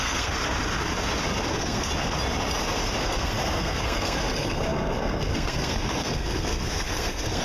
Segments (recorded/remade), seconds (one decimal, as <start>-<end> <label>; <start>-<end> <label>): 0.0-0.4 remade; 0.4-1.5 recorded; 1.5-1.9 remade; 1.9-3.0 recorded; 3.0-7.4 remade